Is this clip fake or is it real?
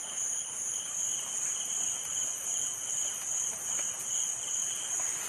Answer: real